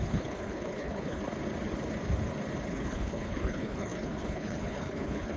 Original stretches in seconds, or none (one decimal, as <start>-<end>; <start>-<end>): 1.2-2.7